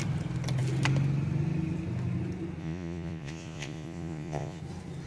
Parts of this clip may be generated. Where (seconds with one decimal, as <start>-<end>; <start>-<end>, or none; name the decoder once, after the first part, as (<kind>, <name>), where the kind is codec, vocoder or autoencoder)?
2.6-4.6 (vocoder, Vocos)